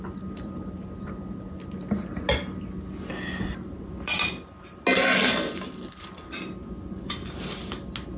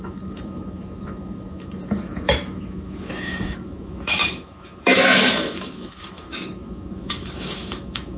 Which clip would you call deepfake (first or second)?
second